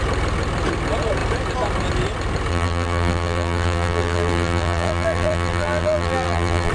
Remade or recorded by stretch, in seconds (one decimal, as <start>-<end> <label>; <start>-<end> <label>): 0.0-2.5 recorded; 2.5-6.7 remade